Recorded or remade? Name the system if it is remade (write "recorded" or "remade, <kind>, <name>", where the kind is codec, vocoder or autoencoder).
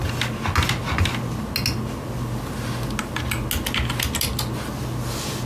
recorded